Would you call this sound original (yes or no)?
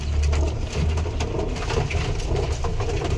yes